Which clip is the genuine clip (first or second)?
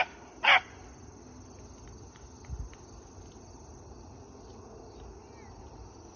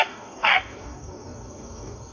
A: first